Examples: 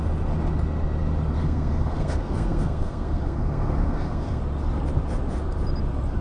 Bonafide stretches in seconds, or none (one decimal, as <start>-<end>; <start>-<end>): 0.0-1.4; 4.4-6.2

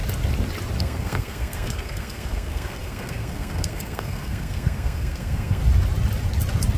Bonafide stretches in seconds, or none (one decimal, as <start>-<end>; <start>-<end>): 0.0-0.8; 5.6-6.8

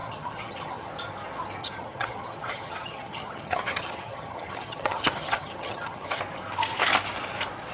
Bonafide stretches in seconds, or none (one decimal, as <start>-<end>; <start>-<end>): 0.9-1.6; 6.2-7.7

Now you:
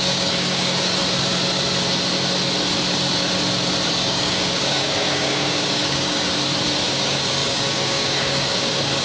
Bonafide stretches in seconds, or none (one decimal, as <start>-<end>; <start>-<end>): 1.0-3.9; 6.2-6.9